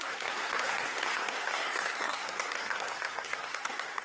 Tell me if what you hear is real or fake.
fake